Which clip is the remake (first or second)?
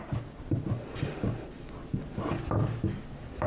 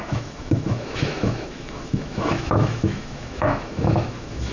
second